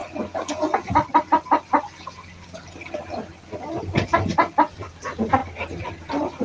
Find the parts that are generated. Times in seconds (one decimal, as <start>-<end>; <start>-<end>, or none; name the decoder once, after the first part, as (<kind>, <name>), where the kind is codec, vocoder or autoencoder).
none